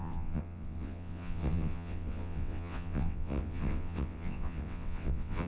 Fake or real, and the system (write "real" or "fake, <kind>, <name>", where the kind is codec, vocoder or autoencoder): fake, vocoder, WaveNeXt